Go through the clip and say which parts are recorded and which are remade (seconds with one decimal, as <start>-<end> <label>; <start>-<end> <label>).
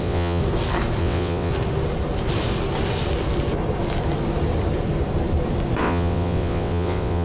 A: 0.0-0.4 remade; 0.4-1.0 recorded; 1.0-1.5 remade; 1.5-5.8 recorded; 5.8-7.2 remade